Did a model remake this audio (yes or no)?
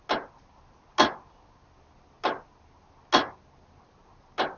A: no